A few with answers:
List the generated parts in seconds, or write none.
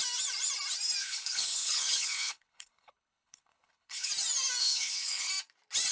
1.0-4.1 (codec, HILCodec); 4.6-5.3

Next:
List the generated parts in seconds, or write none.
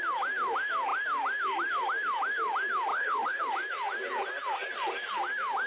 2.9-3.4 (codec, HILCodec)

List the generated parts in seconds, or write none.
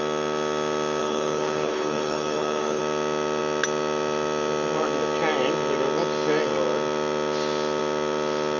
1.0-2.8 (codec, HILCodec)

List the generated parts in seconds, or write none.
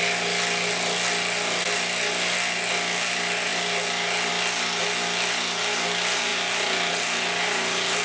none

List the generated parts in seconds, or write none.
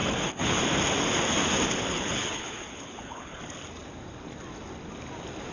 0.0-0.6 (codec, HILCodec); 1.9-3.4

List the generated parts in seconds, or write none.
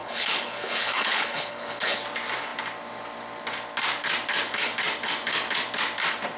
0.0-2.0 (codec, HILCodec)